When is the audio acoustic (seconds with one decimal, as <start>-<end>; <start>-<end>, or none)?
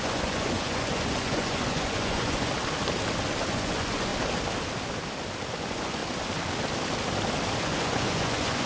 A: 2.5-3.5; 4.1-5.5; 6.0-7.6